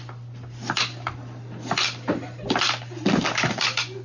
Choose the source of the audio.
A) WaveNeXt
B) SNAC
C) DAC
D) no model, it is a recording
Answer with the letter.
D